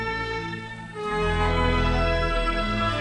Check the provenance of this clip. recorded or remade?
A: remade